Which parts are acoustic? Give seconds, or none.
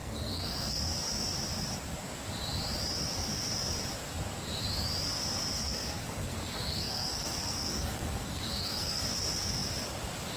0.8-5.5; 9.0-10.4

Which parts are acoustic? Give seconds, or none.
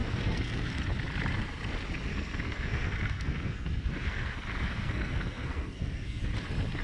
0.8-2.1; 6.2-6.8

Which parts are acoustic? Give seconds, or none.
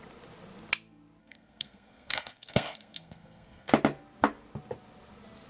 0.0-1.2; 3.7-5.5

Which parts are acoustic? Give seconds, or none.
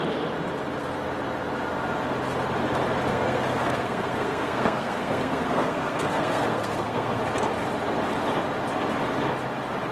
0.0-3.1; 7.2-9.9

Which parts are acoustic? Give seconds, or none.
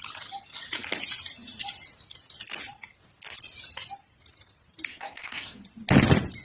0.0-4.9; 5.6-6.4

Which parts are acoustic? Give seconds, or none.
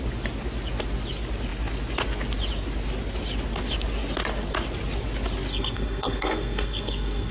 0.0-5.5